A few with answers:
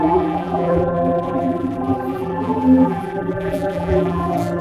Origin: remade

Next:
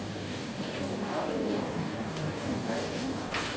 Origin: remade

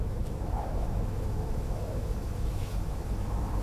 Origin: remade